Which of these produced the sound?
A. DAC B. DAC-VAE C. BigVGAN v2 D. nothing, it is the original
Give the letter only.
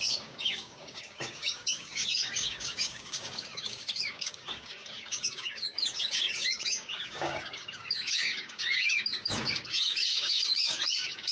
A